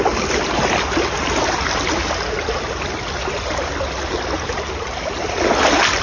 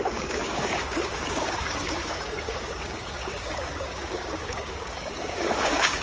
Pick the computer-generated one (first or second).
second